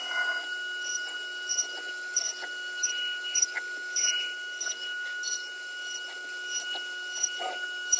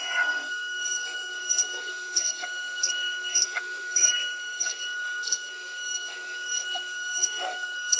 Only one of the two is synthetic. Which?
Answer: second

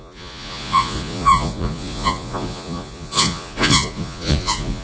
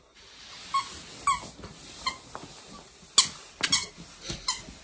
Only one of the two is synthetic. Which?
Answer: first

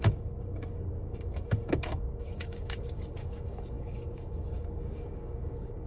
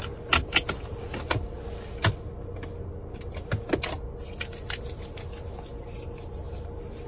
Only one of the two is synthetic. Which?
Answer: first